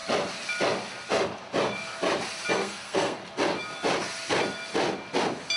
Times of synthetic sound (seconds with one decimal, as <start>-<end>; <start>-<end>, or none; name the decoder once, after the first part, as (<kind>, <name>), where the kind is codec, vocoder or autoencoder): 2.5-3.2 (codec, SNAC)